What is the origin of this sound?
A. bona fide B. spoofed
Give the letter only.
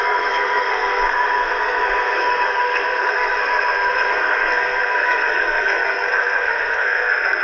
B